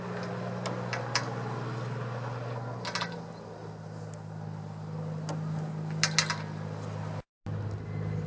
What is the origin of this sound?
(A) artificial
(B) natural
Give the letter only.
B